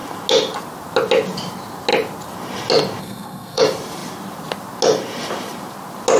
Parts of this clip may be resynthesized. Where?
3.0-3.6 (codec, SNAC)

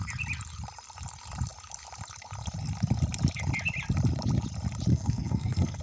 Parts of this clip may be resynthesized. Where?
4.9-5.8 (codec, SNAC)

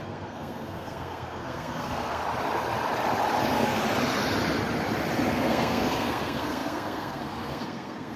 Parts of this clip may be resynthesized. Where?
0.0-2.2 (codec, SNAC); 3.4-3.8; 5.3-8.2